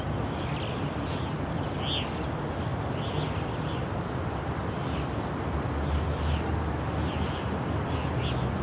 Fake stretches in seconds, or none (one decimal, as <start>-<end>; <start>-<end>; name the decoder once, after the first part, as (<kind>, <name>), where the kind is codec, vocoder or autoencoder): 2.7-4.8 (vocoder, BigVGAN v2)